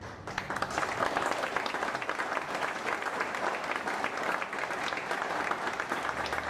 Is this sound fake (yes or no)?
no